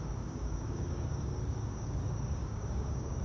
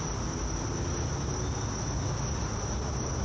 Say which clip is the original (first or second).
second